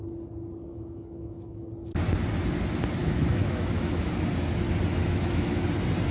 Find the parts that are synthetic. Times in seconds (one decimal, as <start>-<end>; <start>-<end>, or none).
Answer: 0.7-1.7; 3.0-4.1; 4.9-5.6